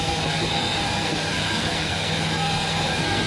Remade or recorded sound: remade